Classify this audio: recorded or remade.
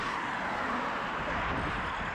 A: recorded